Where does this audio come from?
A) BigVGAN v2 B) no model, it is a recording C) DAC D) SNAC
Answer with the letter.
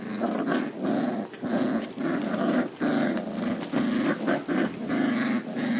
B